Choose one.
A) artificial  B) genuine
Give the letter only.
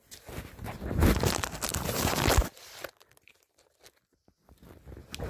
B